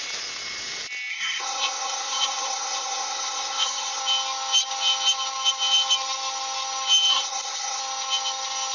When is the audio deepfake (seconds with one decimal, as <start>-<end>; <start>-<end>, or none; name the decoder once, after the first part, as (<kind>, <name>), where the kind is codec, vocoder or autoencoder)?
1.1-4.0 (codec, SNAC); 7.1-7.8